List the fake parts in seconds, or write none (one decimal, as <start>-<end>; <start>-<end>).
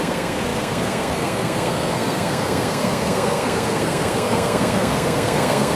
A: 0.0-5.8